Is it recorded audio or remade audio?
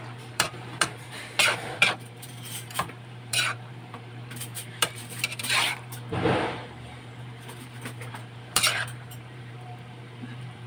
remade